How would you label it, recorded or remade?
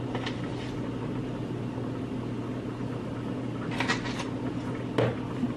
recorded